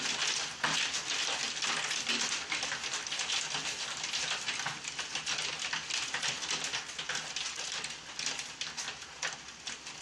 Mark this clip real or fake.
real